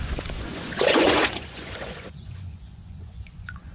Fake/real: fake